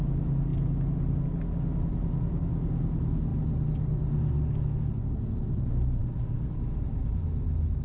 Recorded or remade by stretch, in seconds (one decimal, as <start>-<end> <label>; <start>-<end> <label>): 0.0-7.8 recorded